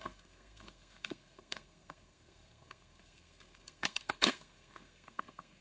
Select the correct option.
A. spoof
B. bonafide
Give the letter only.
A